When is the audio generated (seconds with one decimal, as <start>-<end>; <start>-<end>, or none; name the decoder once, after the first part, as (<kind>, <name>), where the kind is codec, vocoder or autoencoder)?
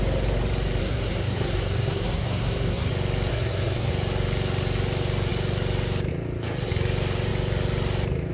0.8-2.9 (codec, SNAC); 3.3-3.9